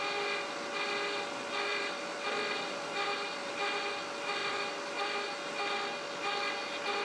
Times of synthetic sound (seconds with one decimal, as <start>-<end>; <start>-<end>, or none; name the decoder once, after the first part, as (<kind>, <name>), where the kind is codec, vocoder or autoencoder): 1.7-3.5 (vocoder, BigVGAN v2); 4.4-5.1